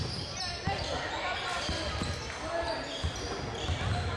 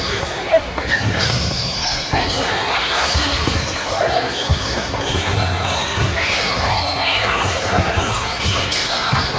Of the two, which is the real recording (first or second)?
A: first